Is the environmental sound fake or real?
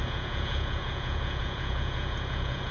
fake